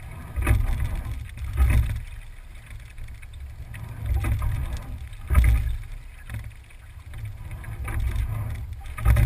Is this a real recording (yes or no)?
yes